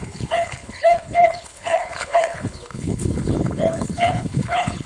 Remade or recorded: remade